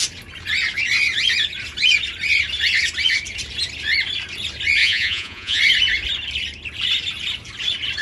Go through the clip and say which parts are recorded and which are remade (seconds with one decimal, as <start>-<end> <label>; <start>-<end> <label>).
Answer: 0.0-4.8 recorded; 4.8-5.6 remade; 5.6-8.0 recorded